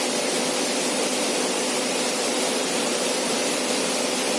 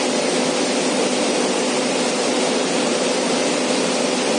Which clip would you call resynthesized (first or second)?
first